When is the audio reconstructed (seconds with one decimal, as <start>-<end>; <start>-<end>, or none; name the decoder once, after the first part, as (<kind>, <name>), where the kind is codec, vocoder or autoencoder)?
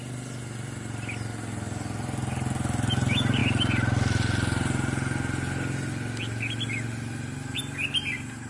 none